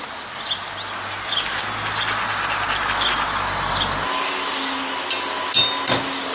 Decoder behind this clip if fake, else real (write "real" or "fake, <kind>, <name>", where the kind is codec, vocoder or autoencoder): real